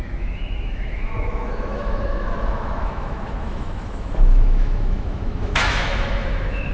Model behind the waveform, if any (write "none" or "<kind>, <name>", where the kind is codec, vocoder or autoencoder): autoencoder, DAC-VAE